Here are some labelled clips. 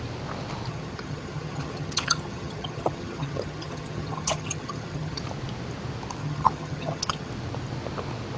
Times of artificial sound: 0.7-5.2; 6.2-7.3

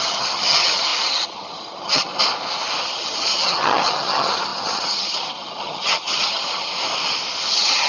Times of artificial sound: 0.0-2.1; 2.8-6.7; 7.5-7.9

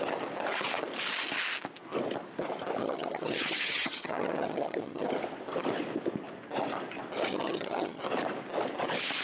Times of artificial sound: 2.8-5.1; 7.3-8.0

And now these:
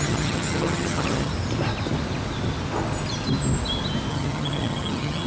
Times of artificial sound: 0.0-1.3; 4.1-5.3

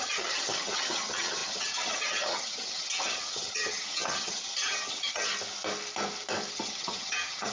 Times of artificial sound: 0.0-5.3; 6.5-7.5

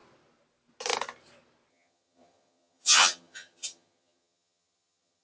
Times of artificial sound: 1.7-5.2

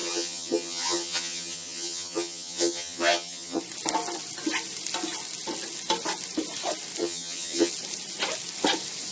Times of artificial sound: 0.0-3.6; 7.0-7.7

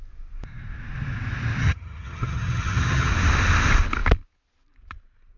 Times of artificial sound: 1.6-3.1